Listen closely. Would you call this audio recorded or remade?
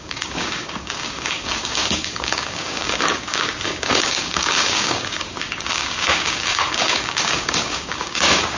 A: remade